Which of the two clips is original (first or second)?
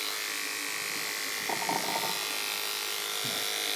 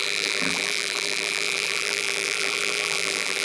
first